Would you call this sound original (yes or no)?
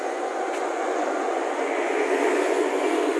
no